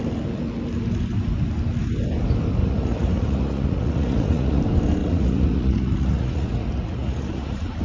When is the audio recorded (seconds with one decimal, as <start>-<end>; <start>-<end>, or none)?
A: 0.0-2.6; 4.6-5.0